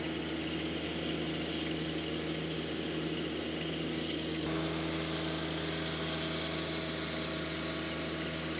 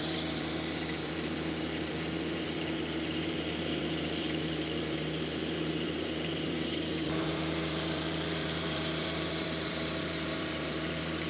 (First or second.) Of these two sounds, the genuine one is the first